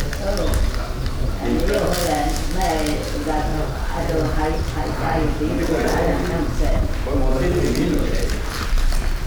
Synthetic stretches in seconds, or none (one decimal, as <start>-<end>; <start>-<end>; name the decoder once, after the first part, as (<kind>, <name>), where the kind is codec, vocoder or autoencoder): 2.0-2.7 (autoencoder, DAC-VAE)